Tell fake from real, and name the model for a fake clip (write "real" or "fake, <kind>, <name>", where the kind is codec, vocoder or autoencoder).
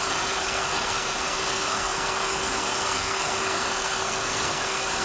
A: fake, codec, SNAC